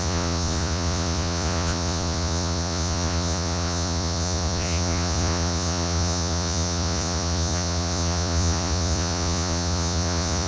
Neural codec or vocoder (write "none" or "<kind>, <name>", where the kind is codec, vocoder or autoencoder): vocoder, Vocos